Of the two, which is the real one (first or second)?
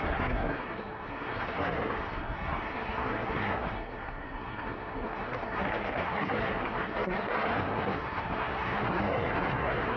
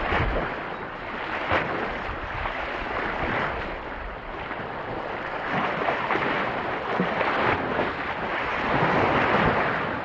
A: second